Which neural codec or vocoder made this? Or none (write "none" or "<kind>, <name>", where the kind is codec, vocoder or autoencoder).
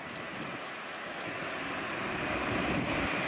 none